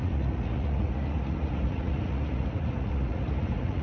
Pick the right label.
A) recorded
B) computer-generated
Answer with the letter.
B